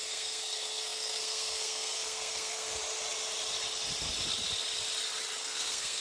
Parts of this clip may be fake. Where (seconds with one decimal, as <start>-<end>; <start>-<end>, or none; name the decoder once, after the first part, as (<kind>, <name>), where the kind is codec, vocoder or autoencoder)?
0.0-2.8 (codec, SNAC); 5.4-6.0